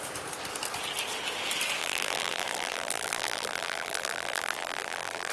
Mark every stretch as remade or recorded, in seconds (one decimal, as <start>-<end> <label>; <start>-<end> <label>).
0.0-1.8 recorded; 1.8-5.3 remade